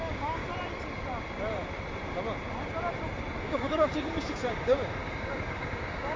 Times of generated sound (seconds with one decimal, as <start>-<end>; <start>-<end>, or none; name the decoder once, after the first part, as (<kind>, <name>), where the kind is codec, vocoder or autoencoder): 0.0-0.4 (codec, DAC); 3.4-6.2